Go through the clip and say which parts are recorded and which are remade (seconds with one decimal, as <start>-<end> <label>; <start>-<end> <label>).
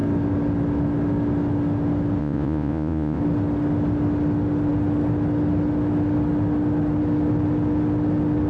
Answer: 0.0-2.2 recorded; 2.2-3.2 remade; 3.2-8.5 recorded